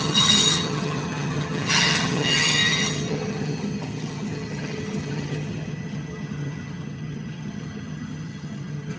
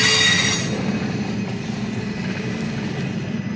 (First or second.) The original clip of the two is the second